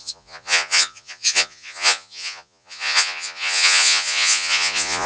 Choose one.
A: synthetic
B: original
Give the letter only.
A